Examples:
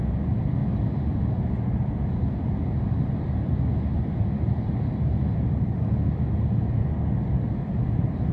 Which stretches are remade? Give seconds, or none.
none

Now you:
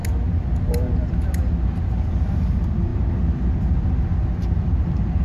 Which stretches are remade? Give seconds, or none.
none

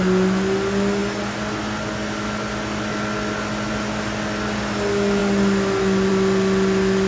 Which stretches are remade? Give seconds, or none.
none

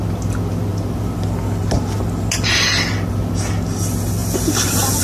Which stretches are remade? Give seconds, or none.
none

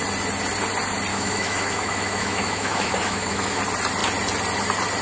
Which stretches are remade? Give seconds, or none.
1.1-3.6

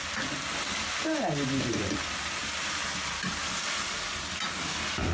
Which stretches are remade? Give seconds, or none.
none

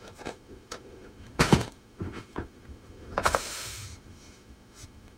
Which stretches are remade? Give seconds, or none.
0.0-5.2

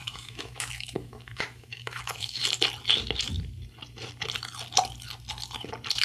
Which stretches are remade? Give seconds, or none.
0.0-2.4